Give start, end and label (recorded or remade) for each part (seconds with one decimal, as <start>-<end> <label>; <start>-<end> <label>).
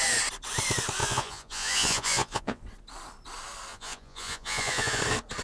0.0-1.0 recorded; 1.0-2.6 remade; 2.6-3.7 recorded; 3.7-5.0 remade; 5.0-5.4 recorded